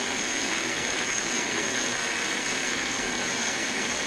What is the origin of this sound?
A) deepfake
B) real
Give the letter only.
A